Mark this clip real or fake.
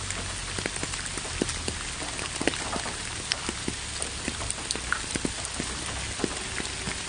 real